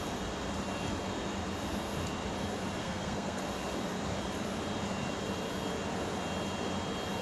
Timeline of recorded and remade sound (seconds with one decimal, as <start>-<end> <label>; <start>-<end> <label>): 0.0-2.8 recorded; 2.8-3.4 remade; 3.4-7.2 recorded

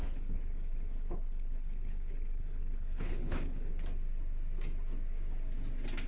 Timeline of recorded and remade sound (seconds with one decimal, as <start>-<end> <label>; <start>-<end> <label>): 0.0-3.7 remade; 3.7-6.1 recorded

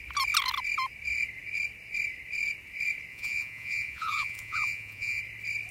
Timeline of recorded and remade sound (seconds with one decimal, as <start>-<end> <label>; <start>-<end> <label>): 0.0-3.1 recorded; 3.1-5.2 remade; 5.2-5.7 recorded

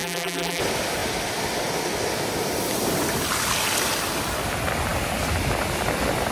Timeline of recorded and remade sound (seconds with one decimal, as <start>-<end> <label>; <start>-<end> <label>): 0.0-0.6 remade; 0.6-6.3 recorded

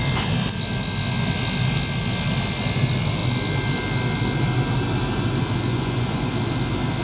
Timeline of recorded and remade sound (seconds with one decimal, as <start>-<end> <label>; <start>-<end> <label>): 0.0-5.7 recorded; 5.7-6.3 remade; 6.3-7.0 recorded

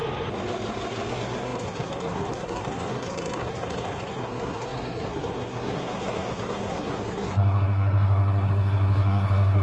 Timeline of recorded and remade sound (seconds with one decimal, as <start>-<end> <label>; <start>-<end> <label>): 0.0-1.1 recorded; 1.1-9.6 remade

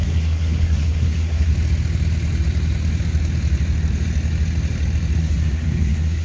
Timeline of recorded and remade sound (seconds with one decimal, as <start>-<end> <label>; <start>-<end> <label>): 0.0-1.5 remade; 1.5-5.2 recorded; 5.2-6.2 remade